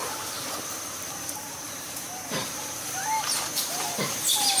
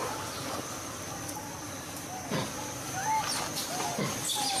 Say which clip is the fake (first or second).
first